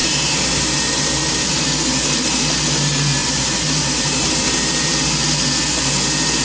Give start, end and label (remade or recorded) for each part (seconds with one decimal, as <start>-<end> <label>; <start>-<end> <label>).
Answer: 0.0-1.6 remade; 1.6-3.2 recorded; 3.2-4.2 remade; 4.2-6.4 recorded

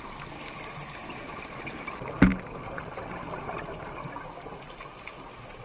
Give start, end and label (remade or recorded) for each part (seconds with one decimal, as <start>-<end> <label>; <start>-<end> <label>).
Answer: 0.0-5.6 recorded

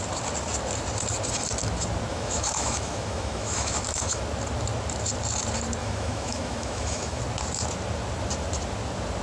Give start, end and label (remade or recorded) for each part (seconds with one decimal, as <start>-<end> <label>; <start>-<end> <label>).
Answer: 0.0-2.1 recorded; 2.1-4.2 remade; 4.2-5.8 recorded; 5.8-7.2 remade; 7.2-9.2 recorded

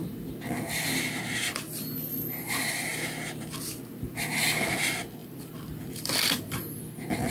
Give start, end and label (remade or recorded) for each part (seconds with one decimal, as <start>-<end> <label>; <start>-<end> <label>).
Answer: 0.0-5.2 recorded; 5.2-6.8 remade; 6.8-7.3 recorded

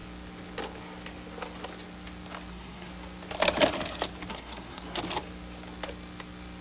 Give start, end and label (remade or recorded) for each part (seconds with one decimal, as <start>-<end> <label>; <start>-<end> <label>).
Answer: 0.0-2.5 recorded; 2.5-2.9 remade; 2.9-4.3 recorded; 4.3-4.8 remade; 4.8-6.6 recorded